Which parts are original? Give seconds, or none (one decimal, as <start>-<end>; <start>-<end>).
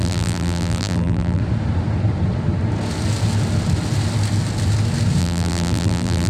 1.4-5.2